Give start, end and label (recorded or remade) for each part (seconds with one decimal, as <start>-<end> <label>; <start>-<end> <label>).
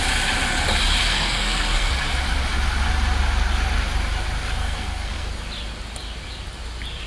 0.0-1.0 recorded; 1.0-1.9 remade; 1.9-4.6 recorded; 4.6-5.3 remade; 5.3-7.1 recorded